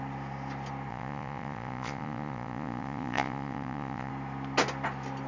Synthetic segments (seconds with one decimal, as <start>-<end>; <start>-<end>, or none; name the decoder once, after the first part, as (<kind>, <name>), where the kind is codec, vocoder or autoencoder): 0.9-4.1 (vocoder, Vocos)